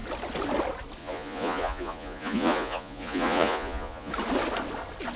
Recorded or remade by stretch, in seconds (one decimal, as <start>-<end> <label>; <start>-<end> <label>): 0.0-1.0 recorded; 1.0-4.1 remade; 4.1-5.2 recorded